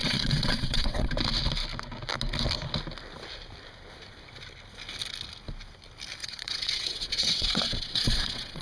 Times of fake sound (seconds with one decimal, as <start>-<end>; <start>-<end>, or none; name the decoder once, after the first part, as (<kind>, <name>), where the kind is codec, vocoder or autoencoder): 0.0-1.1 (vocoder, WaveNeXt); 6.2-8.6